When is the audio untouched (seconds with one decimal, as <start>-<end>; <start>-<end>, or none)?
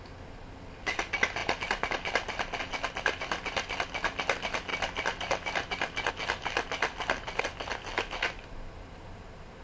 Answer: 0.0-9.6